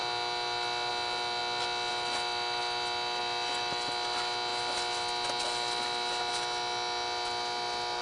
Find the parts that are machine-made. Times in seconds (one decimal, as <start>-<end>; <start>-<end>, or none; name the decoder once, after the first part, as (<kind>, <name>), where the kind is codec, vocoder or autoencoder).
none